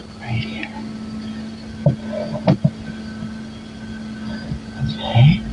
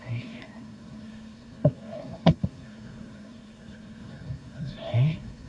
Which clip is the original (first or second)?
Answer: first